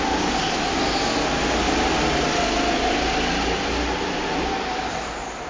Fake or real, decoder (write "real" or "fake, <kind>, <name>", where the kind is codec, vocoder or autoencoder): real